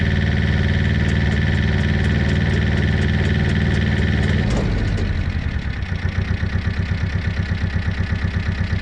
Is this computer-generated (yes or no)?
no